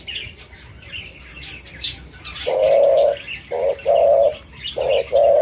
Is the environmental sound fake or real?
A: real